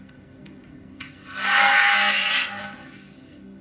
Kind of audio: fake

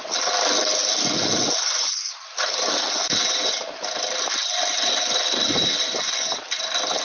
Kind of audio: real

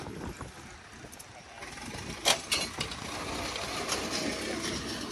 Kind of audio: real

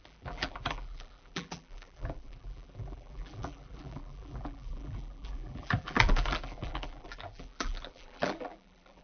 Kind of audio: fake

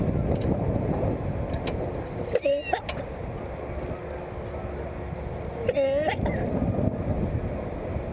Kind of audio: real